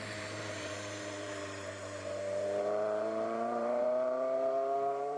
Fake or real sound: fake